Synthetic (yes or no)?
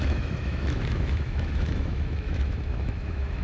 yes